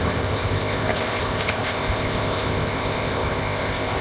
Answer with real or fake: fake